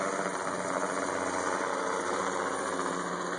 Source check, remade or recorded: recorded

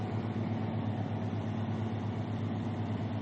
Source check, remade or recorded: recorded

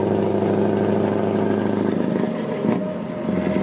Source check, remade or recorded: recorded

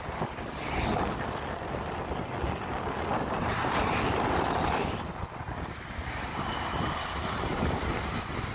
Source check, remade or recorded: recorded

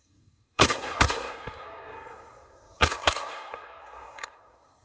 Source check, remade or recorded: remade